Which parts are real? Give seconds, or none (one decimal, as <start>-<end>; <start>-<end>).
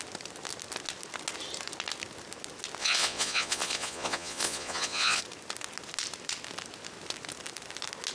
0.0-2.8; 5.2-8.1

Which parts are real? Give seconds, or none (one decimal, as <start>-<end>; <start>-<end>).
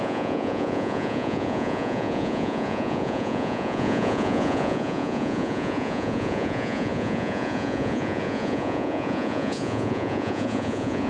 none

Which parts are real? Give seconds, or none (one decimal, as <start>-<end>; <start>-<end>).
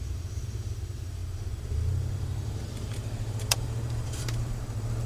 none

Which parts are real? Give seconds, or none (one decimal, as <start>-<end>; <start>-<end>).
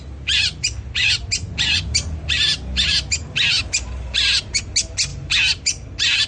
0.0-6.3